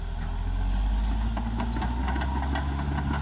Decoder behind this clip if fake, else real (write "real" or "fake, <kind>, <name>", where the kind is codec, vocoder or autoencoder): real